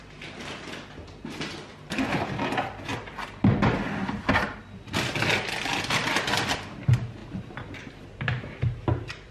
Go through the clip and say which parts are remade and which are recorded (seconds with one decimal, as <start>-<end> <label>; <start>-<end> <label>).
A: 0.0-9.3 recorded